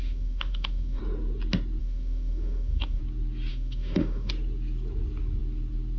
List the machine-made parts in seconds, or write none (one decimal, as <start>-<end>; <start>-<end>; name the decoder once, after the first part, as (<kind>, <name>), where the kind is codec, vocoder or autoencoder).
0.0-1.0 (autoencoder, DAC-VAE); 1.8-3.0; 3.5-4.3